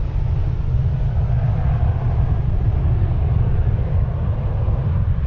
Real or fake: real